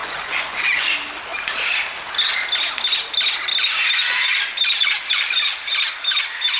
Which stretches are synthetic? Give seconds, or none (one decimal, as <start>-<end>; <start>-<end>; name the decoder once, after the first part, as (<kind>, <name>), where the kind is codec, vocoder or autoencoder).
0.0-0.9 (vocoder, Vocos)